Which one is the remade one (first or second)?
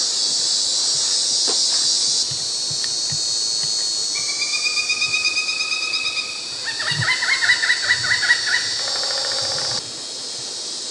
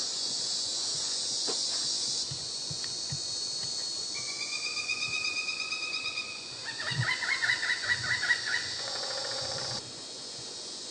second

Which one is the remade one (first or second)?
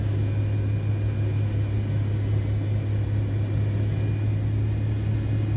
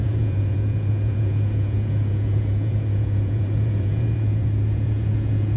second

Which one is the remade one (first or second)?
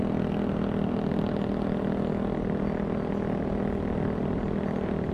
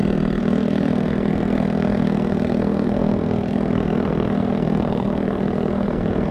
second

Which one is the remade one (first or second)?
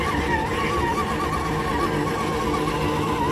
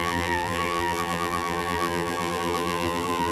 second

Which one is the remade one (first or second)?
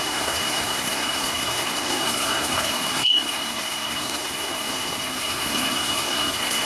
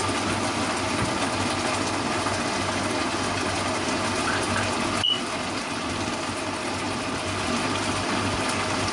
first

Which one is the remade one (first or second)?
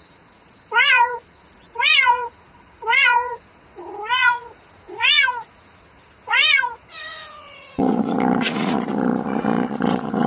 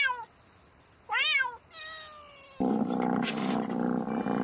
first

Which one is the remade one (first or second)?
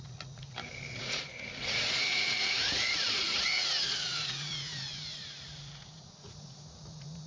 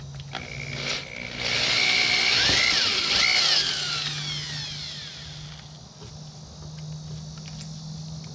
first